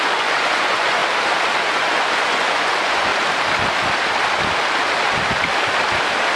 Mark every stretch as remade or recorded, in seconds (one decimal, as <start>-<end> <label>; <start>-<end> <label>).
0.0-1.0 remade; 1.0-1.6 recorded; 1.6-3.1 remade; 3.1-6.4 recorded